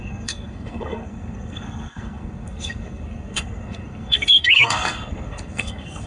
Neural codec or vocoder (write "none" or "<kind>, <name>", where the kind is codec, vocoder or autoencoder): codec, SNAC